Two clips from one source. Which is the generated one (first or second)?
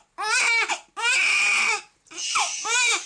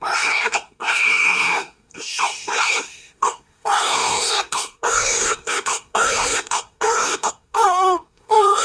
second